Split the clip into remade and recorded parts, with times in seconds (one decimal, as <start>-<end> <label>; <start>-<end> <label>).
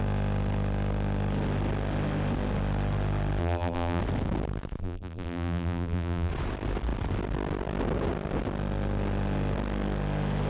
0.0-3.4 recorded; 3.4-4.0 remade; 4.0-4.8 recorded; 4.8-6.3 remade; 6.3-10.5 recorded